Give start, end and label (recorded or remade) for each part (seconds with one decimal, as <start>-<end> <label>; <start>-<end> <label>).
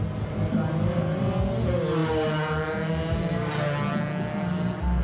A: 0.0-5.0 recorded